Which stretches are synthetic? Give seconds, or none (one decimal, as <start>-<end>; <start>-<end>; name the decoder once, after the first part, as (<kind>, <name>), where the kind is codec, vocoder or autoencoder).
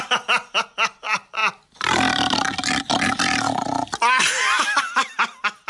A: none